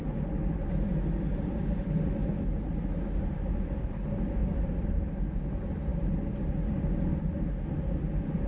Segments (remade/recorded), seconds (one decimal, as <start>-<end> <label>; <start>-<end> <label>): 0.0-4.4 recorded; 4.4-5.1 remade; 5.1-8.5 recorded